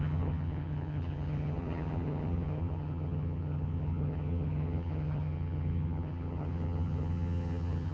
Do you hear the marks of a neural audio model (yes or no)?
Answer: yes